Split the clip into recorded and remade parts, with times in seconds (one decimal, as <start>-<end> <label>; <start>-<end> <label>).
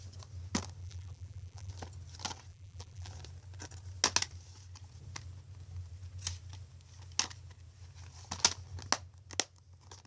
0.0-0.8 recorded; 0.8-1.7 remade; 1.7-2.5 recorded; 2.5-3.1 remade; 3.1-10.1 recorded